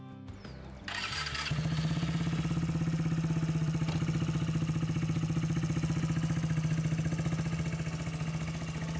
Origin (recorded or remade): recorded